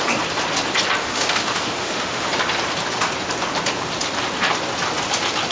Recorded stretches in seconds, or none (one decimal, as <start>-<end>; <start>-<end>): 0.0-1.0; 2.3-5.5